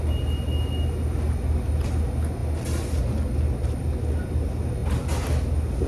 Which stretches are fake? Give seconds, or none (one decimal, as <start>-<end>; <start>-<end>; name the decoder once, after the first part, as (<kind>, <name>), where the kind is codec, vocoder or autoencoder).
none